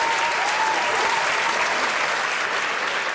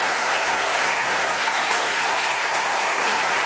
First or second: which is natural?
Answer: first